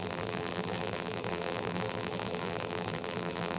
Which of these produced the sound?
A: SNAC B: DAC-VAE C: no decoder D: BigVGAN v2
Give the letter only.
D